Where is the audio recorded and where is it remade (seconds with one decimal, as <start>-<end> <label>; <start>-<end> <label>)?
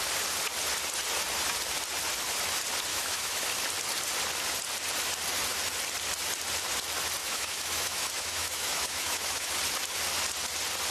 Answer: 0.0-2.9 recorded; 2.9-3.4 remade; 3.4-7.2 recorded; 7.2-9.5 remade; 9.5-10.9 recorded